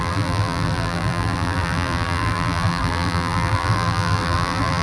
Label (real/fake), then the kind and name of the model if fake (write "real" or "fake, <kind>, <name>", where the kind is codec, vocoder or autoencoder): fake, vocoder, BigVGAN v2